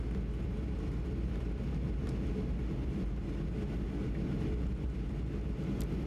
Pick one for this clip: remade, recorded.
recorded